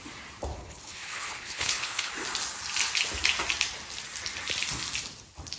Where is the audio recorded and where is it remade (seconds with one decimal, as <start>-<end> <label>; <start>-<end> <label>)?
0.0-0.5 recorded; 0.5-2.1 remade; 2.1-5.6 recorded